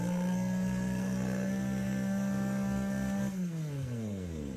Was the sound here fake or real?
fake